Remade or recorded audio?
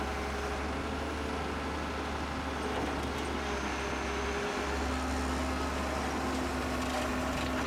recorded